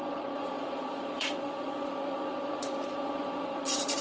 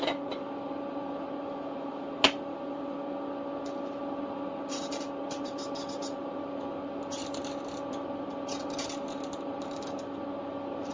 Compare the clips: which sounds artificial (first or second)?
first